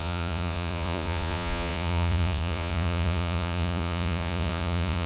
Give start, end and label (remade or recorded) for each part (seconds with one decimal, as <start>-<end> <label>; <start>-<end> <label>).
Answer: 0.0-5.1 remade